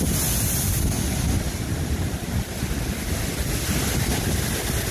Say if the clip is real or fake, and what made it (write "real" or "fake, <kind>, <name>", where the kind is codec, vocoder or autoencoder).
real